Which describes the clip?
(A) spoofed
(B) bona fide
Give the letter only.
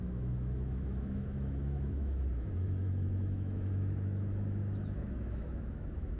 A